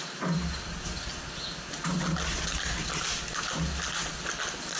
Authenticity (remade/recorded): recorded